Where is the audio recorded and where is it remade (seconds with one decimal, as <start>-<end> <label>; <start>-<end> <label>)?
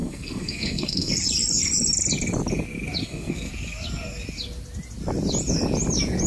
0.0-1.1 remade; 1.1-3.0 recorded; 3.0-3.5 remade; 3.5-6.3 recorded